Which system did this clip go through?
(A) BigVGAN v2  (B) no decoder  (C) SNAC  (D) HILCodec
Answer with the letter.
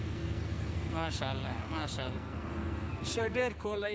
C